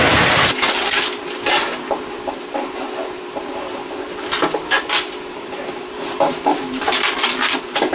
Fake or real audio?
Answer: fake